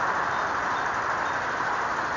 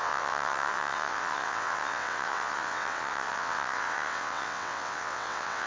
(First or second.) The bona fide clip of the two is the first